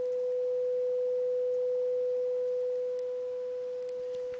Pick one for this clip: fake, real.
real